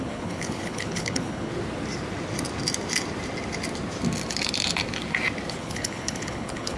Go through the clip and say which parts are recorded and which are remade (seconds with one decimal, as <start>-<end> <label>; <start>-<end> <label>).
0.0-1.5 remade; 1.5-5.6 recorded; 5.6-6.8 remade